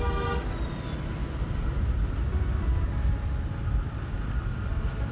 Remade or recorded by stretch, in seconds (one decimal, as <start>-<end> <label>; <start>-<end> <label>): 0.0-5.1 recorded